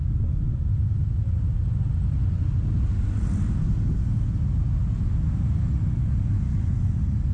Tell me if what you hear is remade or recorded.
recorded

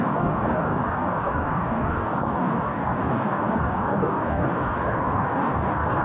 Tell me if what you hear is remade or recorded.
remade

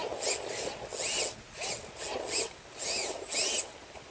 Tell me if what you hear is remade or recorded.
recorded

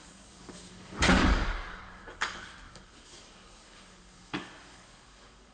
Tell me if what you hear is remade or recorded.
remade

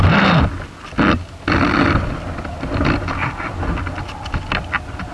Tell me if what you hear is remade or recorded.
recorded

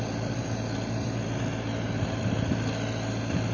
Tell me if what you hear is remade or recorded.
recorded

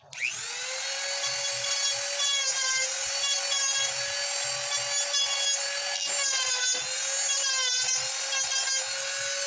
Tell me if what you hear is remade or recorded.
recorded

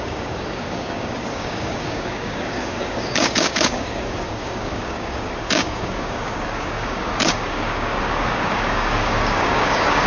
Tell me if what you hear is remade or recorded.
remade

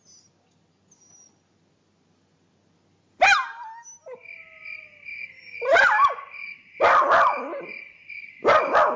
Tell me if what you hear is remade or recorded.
recorded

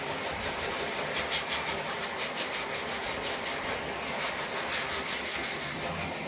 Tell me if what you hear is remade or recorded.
remade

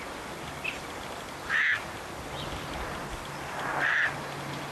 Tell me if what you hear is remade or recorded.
recorded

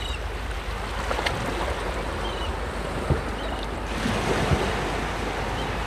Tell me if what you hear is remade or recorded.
recorded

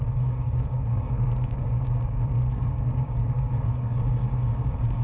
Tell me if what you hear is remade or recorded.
remade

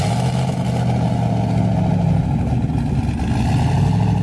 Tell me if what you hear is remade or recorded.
recorded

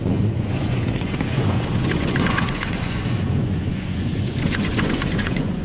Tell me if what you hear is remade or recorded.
remade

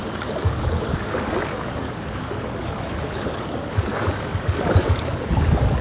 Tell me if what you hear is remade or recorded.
remade